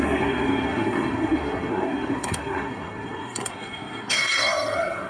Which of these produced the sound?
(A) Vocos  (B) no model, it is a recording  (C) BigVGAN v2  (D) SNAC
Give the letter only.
D